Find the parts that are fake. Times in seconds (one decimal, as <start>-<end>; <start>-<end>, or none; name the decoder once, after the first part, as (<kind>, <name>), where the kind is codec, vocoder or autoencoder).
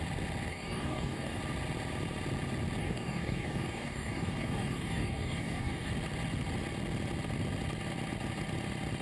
0.5-1.4 (codec, DAC); 2.8-5.9